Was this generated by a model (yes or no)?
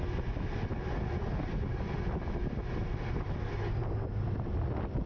no